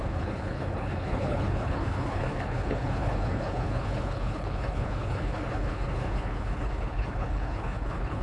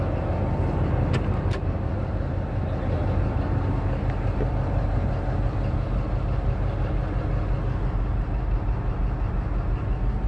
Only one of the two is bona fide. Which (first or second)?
second